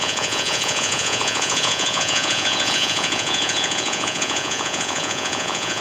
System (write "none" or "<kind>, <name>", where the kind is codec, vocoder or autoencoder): vocoder, Vocos